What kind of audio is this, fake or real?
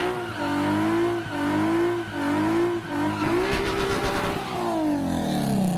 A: real